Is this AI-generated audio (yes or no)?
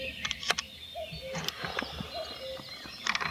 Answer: no